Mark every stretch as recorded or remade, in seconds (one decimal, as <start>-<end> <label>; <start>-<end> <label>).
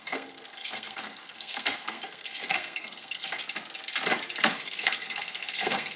0.0-3.3 remade; 3.3-4.4 recorded; 4.4-6.0 remade